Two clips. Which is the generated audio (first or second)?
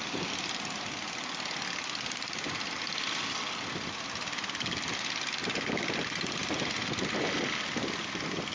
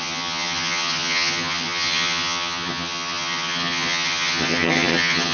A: second